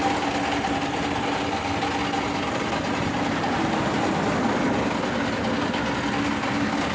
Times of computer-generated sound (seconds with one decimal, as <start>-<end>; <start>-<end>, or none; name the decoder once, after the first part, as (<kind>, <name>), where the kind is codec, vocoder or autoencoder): none